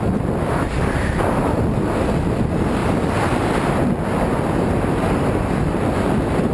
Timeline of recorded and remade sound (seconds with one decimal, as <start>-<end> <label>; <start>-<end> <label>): 0.0-6.5 recorded